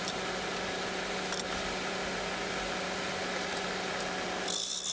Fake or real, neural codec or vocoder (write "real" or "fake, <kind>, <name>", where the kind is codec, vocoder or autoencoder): real